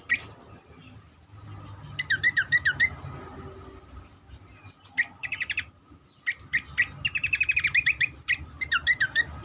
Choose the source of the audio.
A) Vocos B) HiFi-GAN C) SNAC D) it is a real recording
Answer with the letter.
D